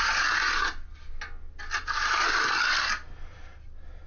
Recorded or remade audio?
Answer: recorded